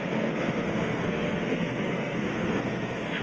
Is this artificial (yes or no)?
yes